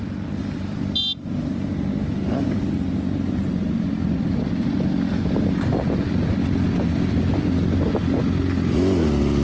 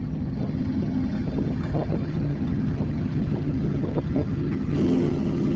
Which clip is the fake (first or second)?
second